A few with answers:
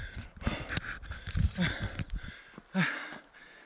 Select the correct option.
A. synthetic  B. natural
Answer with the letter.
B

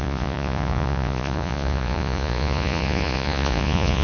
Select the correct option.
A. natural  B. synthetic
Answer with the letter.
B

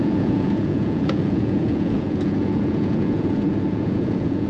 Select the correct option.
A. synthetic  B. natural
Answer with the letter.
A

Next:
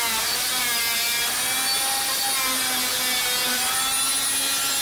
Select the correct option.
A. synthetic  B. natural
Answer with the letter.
B